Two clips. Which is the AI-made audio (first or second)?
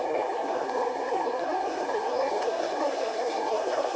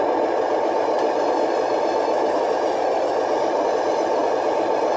first